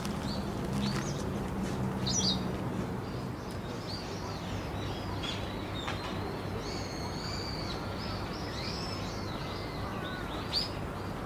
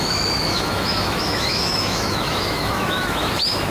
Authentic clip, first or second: first